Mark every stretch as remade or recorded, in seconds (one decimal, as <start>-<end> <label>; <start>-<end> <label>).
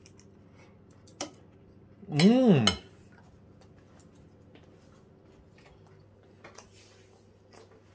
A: 0.0-7.9 recorded